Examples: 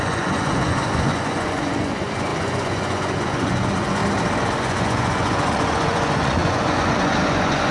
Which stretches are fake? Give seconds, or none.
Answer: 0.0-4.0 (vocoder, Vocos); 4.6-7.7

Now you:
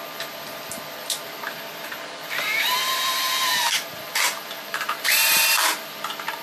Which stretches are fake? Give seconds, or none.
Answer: 2.2-6.0 (vocoder, BigVGAN v2)

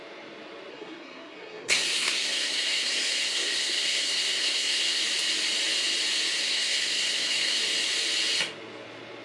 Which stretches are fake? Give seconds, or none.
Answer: 0.7-5.0 (codec, SNAC); 6.4-7.6

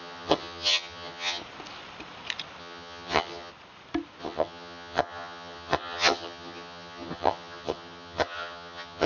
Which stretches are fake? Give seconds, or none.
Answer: 0.0-1.4 (vocoder, HiFi-GAN); 2.6-3.5; 4.2-9.1